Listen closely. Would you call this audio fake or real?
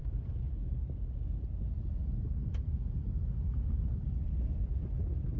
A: real